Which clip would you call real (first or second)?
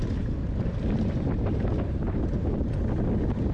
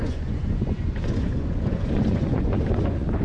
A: first